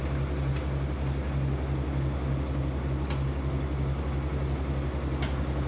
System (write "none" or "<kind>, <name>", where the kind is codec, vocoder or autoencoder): none